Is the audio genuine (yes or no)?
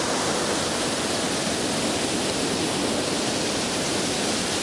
yes